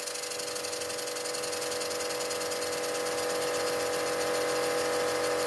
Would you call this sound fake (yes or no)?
no